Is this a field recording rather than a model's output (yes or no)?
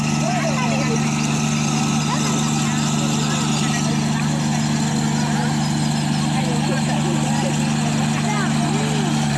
yes